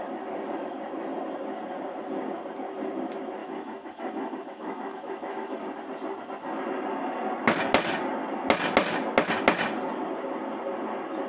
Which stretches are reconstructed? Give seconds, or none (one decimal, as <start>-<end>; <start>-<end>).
3.4-5.6